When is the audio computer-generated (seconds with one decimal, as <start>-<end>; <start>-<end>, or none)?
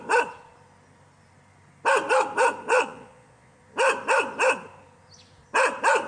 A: 2.7-3.6